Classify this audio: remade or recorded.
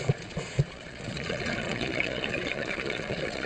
remade